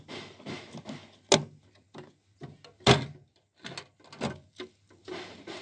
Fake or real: real